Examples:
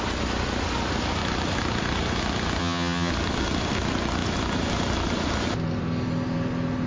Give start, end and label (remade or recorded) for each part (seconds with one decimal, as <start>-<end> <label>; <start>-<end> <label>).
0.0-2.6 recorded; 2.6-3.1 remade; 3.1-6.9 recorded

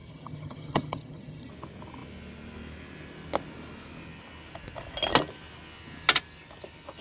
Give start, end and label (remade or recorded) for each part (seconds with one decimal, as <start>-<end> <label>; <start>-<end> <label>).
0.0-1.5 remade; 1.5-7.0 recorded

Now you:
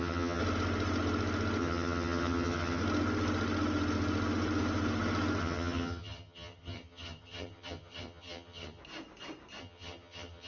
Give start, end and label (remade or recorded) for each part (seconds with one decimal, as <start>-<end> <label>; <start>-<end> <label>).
0.0-0.4 remade; 0.4-1.6 recorded; 1.6-2.8 remade; 2.8-5.4 recorded; 5.4-8.8 remade; 8.8-9.6 recorded; 9.6-10.5 remade

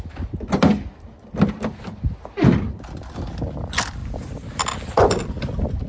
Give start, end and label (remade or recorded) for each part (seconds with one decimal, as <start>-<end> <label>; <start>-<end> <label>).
0.0-5.9 recorded

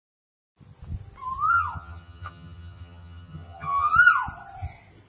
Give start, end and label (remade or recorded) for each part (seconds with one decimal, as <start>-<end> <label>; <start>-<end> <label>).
0.0-1.5 recorded; 1.5-3.9 remade; 3.9-5.1 recorded

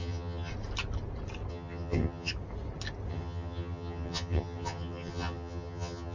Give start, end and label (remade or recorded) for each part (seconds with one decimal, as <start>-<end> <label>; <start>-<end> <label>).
0.0-0.5 remade; 0.5-1.5 recorded; 1.5-2.3 remade; 2.3-3.1 recorded; 3.1-6.1 remade